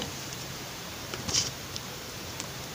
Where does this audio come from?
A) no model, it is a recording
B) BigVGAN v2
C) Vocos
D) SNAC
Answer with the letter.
B